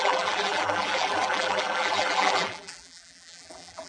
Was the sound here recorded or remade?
remade